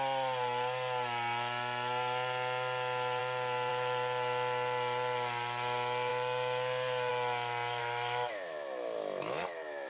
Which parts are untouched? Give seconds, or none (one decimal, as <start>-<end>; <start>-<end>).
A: 0.0-7.8